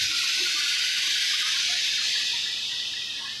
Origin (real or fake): real